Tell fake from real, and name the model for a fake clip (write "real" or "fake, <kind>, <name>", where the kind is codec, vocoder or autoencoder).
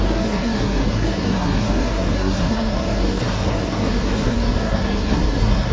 fake, codec, SNAC